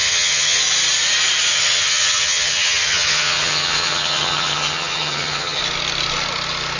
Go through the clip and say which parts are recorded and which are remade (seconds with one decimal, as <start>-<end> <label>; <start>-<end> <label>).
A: 0.0-0.6 remade; 0.6-1.5 recorded; 1.5-5.6 remade; 5.6-6.8 recorded